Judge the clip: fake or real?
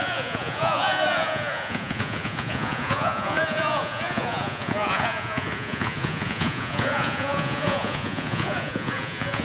fake